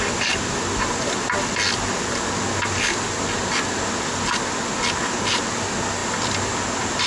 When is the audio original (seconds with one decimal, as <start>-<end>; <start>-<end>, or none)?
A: 0.0-7.1

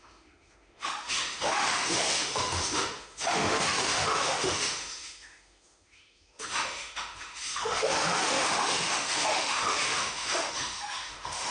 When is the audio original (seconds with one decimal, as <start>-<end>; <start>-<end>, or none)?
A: none

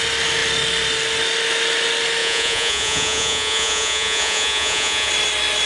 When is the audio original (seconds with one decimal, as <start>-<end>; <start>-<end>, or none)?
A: 0.0-2.2; 5.1-5.7

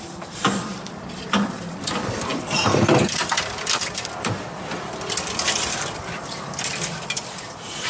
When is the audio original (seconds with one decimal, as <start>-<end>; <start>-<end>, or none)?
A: none

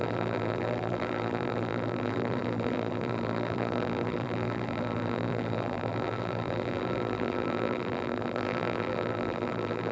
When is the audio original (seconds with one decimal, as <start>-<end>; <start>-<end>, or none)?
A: none

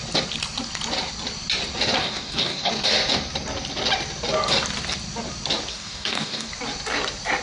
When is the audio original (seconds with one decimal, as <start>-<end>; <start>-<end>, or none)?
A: 0.0-2.0; 2.7-5.7; 6.5-7.4